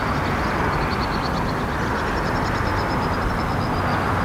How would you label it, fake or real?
real